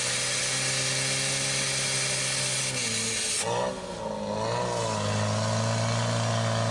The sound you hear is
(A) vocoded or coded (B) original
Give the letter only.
B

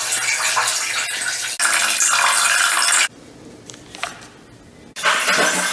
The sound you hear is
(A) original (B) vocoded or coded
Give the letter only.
A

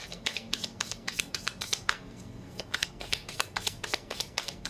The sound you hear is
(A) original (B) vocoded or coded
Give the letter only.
B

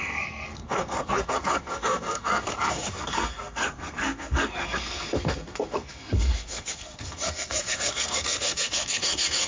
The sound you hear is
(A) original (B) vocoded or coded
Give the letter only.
B